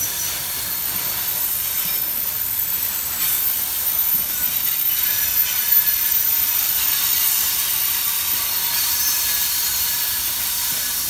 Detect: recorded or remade recorded